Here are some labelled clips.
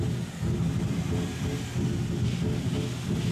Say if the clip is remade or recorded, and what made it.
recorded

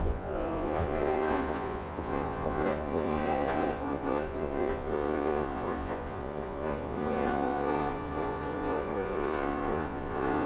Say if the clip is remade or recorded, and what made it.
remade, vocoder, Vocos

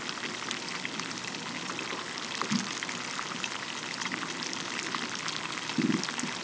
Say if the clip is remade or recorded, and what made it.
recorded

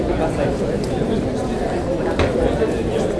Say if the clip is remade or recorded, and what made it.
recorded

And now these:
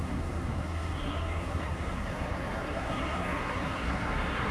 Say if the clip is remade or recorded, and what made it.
remade, codec, SNAC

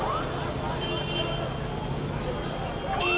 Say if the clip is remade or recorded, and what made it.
recorded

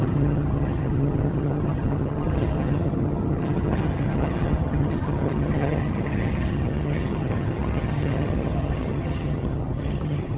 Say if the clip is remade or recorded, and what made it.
remade, vocoder, HiFi-GAN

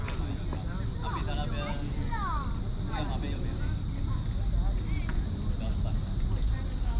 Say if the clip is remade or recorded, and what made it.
recorded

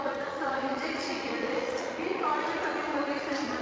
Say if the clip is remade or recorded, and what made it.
remade, vocoder, Vocos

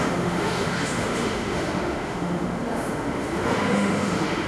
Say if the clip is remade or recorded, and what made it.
remade, autoencoder, DAC-VAE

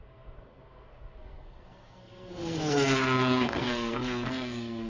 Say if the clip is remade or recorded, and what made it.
remade, codec, SNAC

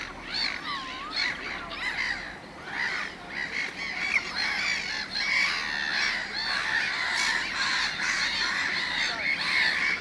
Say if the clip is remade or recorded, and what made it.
recorded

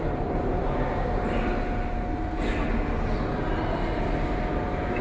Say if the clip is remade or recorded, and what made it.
recorded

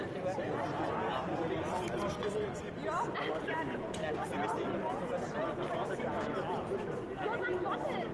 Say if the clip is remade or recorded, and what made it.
recorded